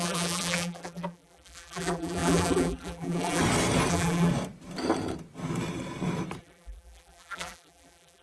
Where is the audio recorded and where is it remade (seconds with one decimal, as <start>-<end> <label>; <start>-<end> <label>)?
0.0-3.4 remade; 3.4-3.9 recorded; 3.9-4.3 remade; 4.3-6.4 recorded; 6.4-8.2 remade

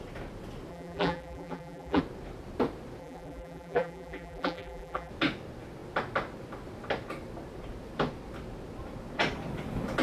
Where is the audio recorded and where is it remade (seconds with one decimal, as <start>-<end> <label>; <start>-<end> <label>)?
0.0-0.7 recorded; 0.7-2.0 remade; 2.0-3.0 recorded; 3.0-5.1 remade; 5.1-10.0 recorded

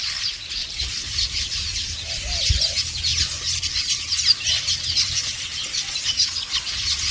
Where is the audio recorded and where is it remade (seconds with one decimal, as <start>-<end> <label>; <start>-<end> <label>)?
0.0-0.6 recorded; 0.6-2.5 remade; 2.5-3.1 recorded; 3.1-6.0 remade; 6.0-7.1 recorded